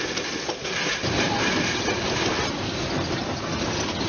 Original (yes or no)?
yes